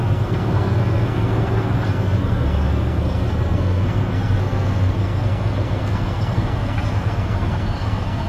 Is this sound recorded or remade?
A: remade